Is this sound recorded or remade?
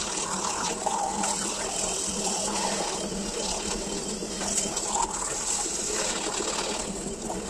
recorded